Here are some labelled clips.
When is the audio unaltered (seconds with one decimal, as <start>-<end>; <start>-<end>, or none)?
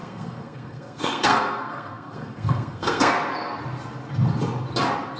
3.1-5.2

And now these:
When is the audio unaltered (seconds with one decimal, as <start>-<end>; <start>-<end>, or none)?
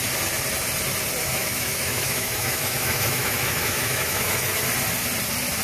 0.0-1.2; 4.6-5.6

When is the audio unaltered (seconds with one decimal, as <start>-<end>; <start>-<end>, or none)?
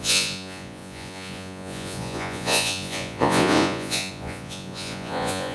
none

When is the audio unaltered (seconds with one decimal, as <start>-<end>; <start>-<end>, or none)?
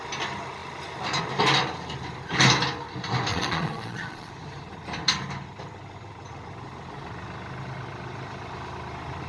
0.0-3.3; 4.3-9.3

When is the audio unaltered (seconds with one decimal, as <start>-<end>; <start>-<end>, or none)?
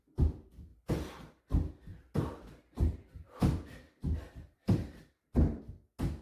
0.0-0.7; 1.4-1.9; 5.6-6.2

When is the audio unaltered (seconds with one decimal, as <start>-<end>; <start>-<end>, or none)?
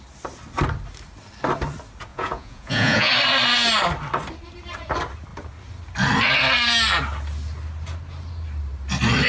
0.0-2.1; 3.1-9.3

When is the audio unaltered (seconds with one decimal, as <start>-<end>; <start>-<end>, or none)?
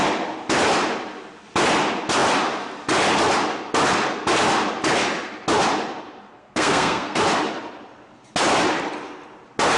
0.0-6.4; 7.2-9.8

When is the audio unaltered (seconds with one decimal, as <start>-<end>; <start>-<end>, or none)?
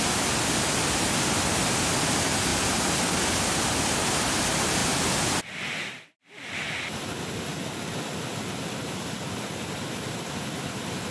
0.0-2.5; 3.0-4.8; 5.4-11.1